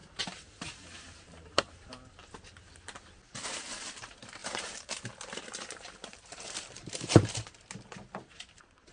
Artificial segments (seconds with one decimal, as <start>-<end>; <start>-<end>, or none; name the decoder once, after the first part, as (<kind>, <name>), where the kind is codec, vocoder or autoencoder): 0.0-1.9 (vocoder, BigVGAN v2); 4.4-7.3